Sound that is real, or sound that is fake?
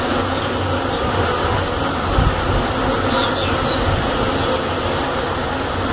real